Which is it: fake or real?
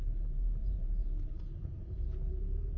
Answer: fake